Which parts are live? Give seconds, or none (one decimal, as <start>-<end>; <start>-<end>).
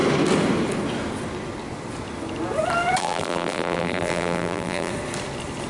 0.0-3.0; 4.9-5.7